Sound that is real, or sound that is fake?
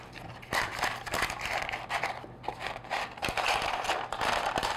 real